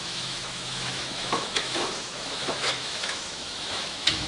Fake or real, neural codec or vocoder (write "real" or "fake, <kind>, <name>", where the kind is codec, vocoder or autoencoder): fake, autoencoder, DAC-VAE